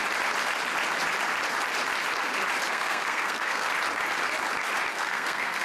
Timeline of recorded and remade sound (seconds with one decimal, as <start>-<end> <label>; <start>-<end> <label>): 0.0-2.7 recorded; 2.7-3.7 remade; 3.7-4.9 recorded; 4.9-5.6 remade